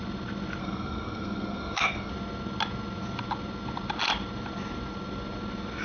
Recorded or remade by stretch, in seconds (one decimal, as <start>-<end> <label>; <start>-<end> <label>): 0.0-0.6 recorded; 0.6-2.1 remade; 2.1-5.8 recorded